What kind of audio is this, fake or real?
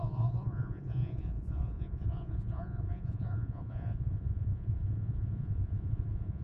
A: fake